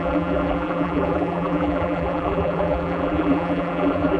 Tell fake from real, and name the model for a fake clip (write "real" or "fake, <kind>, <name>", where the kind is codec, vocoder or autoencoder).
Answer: fake, vocoder, BigVGAN v2